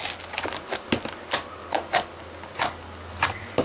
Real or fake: real